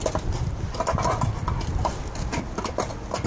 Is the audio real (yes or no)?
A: yes